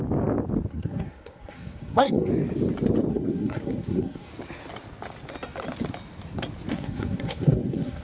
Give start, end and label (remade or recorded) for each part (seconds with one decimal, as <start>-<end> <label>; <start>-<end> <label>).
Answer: 0.0-0.7 recorded; 0.7-2.3 remade; 2.3-3.1 recorded; 3.1-4.3 remade; 4.3-6.7 recorded; 6.7-8.0 remade

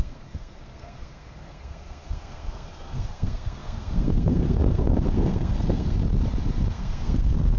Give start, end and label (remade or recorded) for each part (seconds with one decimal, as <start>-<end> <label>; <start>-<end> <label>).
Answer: 0.0-6.0 remade; 6.0-6.7 recorded; 6.7-7.6 remade

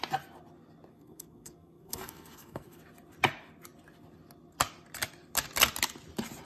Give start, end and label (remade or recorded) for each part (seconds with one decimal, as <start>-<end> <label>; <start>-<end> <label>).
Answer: 0.0-0.9 recorded; 0.9-2.8 remade; 2.8-6.5 recorded